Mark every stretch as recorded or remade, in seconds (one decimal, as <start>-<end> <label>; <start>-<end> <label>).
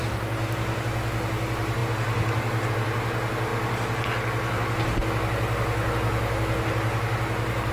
0.0-7.7 recorded